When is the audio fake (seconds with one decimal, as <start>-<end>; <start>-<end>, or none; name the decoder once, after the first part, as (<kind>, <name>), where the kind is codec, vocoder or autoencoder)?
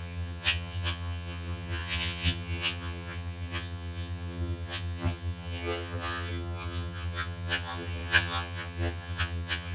0.0-9.7 (vocoder, HiFi-GAN)